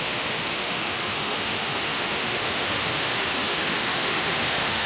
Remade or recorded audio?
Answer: remade